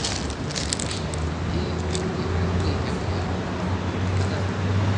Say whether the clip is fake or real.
real